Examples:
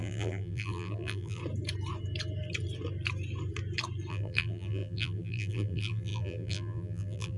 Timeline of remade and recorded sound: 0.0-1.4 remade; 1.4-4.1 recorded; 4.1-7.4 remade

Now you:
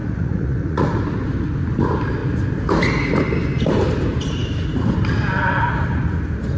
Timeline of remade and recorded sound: 0.0-1.0 remade; 1.0-6.6 recorded